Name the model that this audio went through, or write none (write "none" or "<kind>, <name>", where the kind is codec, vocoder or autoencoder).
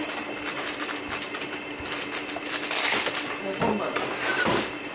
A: none